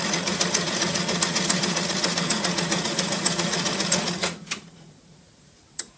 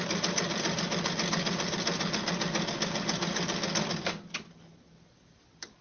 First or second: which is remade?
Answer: first